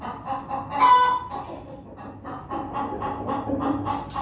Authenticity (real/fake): real